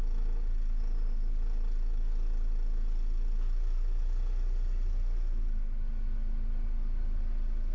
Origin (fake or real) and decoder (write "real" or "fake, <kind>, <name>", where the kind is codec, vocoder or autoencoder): real